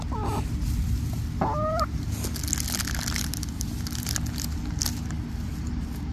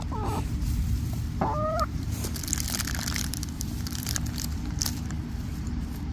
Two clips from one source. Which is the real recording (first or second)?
first